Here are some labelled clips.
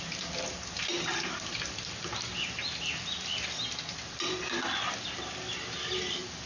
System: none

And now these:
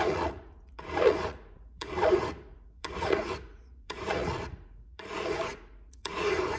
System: vocoder, Vocos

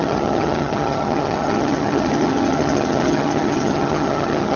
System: vocoder, HiFi-GAN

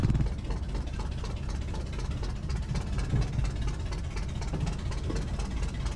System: none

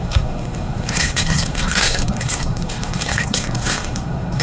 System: codec, SNAC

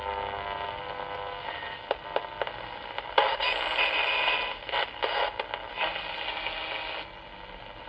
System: none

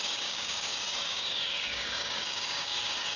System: codec, DAC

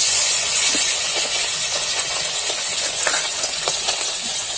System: vocoder, Vocos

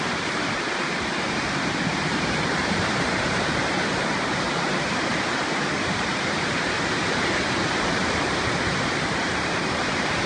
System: vocoder, BigVGAN v2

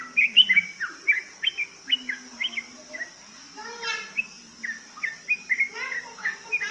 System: none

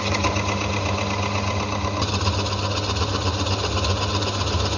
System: none